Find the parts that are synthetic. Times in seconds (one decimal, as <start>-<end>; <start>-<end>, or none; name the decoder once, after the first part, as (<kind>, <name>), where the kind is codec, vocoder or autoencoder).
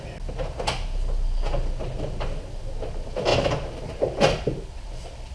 none